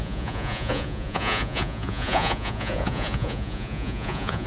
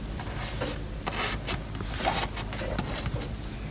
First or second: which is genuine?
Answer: second